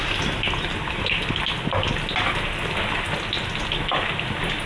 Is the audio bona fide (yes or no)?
yes